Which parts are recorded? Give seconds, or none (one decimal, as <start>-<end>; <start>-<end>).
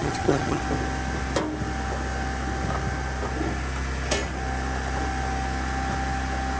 0.6-6.6